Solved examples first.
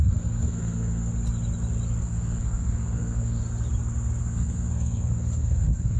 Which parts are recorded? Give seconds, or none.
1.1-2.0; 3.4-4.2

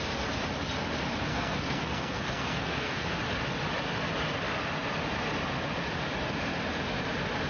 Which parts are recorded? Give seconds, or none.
0.0-1.3; 3.2-7.5